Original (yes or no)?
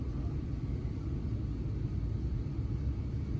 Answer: yes